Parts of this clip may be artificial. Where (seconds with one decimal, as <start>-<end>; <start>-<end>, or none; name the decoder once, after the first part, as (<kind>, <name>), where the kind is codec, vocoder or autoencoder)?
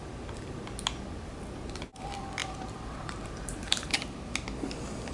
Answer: 2.4-4.3 (vocoder, BigVGAN v2)